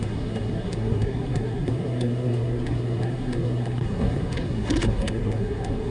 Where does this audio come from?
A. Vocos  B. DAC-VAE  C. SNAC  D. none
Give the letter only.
C